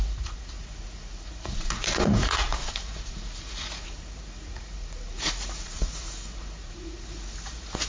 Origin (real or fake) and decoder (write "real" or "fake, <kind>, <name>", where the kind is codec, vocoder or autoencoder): fake, vocoder, Vocos